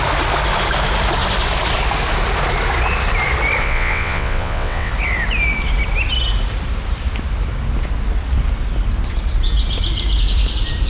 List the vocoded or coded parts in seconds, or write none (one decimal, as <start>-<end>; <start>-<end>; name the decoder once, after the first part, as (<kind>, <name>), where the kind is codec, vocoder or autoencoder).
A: 3.6-4.9 (vocoder, WaveNeXt)